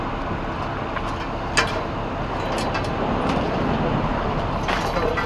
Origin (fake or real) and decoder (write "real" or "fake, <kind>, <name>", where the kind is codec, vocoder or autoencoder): real